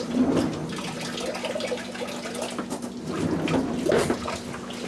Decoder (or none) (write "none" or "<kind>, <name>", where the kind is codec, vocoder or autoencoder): none